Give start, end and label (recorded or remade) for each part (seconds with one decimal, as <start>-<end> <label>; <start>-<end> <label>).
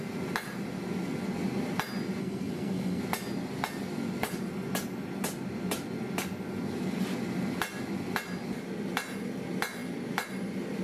0.0-2.2 recorded; 2.2-3.0 remade; 3.0-10.8 recorded